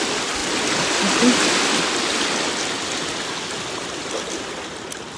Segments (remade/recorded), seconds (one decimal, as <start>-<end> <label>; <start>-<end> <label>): 0.0-5.2 recorded